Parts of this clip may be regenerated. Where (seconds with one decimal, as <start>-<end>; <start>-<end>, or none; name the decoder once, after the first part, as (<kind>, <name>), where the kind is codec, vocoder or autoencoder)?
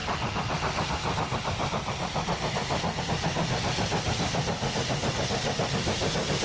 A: none